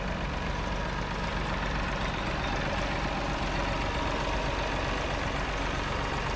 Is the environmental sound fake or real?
real